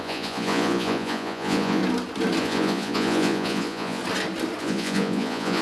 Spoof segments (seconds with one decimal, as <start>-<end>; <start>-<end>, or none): 0.0-1.8; 2.4-4.0; 4.6-5.6